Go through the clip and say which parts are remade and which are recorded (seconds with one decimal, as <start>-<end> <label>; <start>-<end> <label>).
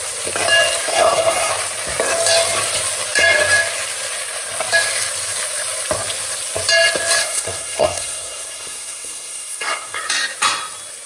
0.0-0.9 recorded; 0.9-1.5 remade; 1.5-7.2 recorded; 7.2-10.0 remade; 10.0-11.1 recorded